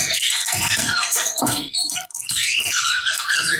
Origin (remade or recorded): remade